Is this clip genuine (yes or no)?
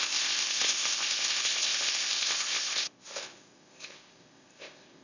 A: no